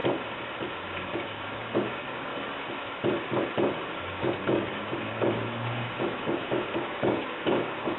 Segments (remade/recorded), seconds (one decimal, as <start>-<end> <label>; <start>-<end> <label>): 0.0-0.7 recorded; 0.7-2.3 remade; 2.3-3.8 recorded; 3.8-8.0 remade